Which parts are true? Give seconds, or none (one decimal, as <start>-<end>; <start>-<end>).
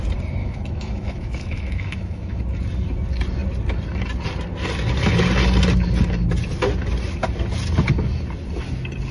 0.0-0.4; 2.4-9.1